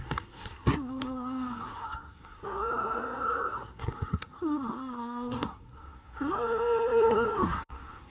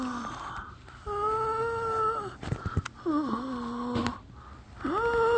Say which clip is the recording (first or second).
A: second